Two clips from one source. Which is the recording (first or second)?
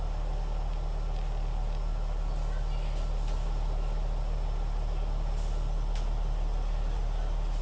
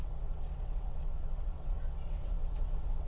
first